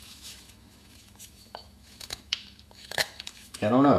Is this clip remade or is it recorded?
remade